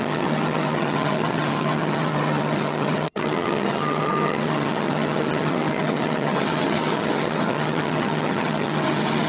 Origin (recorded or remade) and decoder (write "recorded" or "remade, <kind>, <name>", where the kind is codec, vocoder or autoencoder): remade, vocoder, HiFi-GAN